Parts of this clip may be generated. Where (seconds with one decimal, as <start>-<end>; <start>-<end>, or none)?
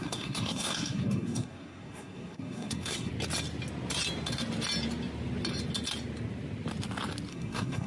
0.0-3.1; 7.3-7.9